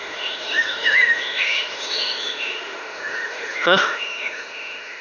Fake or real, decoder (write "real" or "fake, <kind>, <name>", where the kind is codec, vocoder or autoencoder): fake, autoencoder, DAC-VAE